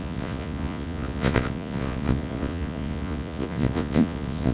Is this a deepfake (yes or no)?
yes